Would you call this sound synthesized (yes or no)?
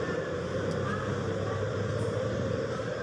yes